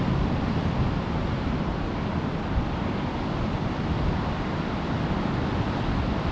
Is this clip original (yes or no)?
no